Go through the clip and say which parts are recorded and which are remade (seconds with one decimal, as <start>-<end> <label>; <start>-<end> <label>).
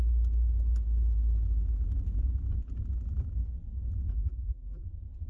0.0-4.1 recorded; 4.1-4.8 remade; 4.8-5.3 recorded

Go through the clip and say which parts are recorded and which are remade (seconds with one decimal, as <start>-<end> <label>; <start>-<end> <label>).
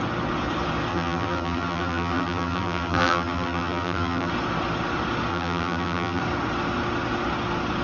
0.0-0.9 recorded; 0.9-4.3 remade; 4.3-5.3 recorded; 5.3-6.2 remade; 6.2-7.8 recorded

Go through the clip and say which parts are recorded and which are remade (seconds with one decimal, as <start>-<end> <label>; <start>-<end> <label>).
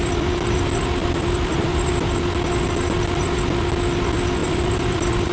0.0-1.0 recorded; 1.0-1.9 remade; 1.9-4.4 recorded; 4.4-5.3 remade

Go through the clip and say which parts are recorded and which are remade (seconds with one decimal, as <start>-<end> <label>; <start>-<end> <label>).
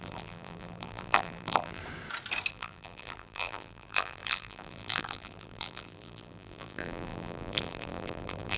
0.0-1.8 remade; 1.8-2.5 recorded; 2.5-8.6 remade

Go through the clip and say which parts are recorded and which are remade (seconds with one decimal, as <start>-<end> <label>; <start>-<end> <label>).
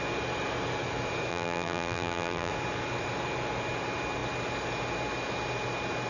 0.0-1.3 recorded; 1.3-2.5 remade; 2.5-6.1 recorded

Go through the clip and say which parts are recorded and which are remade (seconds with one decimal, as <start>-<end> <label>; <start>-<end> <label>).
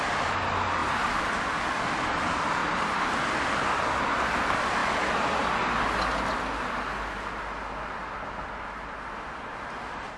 0.0-2.6 recorded; 2.6-3.1 remade; 3.1-10.2 recorded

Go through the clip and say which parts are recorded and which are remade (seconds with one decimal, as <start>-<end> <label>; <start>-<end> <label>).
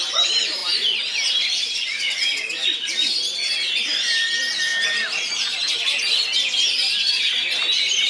0.0-0.6 remade; 0.6-1.3 recorded; 1.3-4.7 remade; 4.7-7.1 recorded; 7.1-8.1 remade